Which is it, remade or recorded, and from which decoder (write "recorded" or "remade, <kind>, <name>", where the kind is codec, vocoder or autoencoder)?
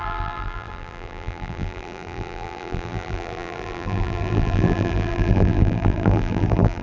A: remade, vocoder, BigVGAN v2